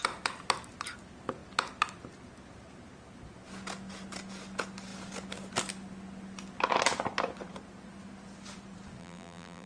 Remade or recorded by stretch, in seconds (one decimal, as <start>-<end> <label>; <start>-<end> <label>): 0.0-9.0 recorded; 9.0-9.7 remade